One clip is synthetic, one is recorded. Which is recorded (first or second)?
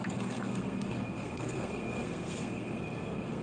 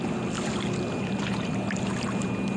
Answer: second